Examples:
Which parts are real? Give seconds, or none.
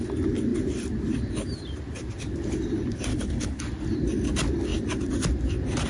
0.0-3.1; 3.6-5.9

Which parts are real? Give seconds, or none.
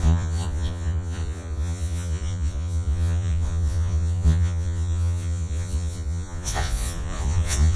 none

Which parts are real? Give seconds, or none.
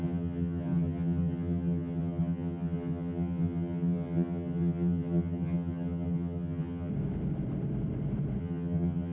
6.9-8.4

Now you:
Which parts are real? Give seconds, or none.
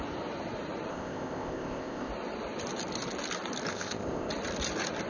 0.0-0.9; 2.1-3.7; 4.3-5.1